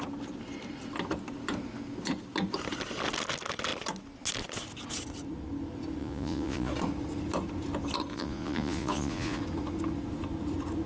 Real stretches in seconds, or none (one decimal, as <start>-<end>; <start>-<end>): 0.0-6.0; 6.7-8.1; 9.4-10.9

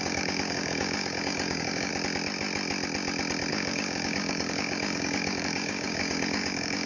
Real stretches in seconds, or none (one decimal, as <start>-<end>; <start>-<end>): 1.9-3.5

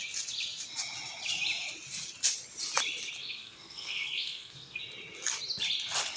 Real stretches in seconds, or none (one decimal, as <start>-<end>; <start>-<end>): 0.0-3.2; 4.8-6.2

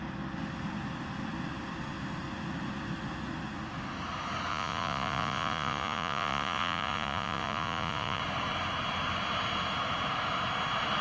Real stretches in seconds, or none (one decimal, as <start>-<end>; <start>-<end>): 0.0-4.5; 8.2-11.0

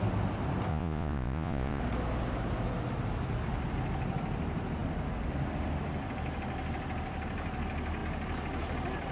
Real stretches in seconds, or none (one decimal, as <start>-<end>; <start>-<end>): 0.0-0.7; 1.8-9.1

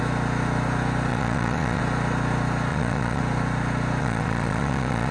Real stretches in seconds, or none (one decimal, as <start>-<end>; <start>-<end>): 0.0-1.1; 1.8-2.7; 3.2-4.0

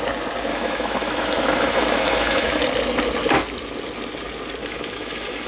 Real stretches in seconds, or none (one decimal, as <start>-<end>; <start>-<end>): 0.0-0.5; 2.6-4.6